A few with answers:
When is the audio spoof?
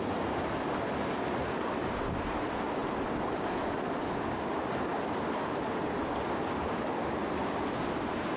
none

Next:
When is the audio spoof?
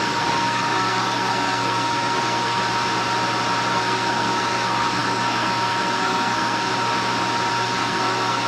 0.0-2.6 (codec, SNAC); 3.7-6.7; 7.5-8.5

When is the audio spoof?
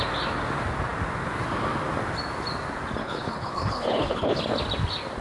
3.0-4.4 (codec, HILCodec)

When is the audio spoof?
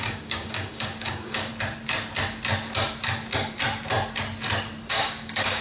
0.0-1.5 (codec, DAC); 4.9-5.6